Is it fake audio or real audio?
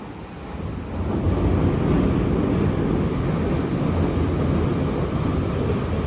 real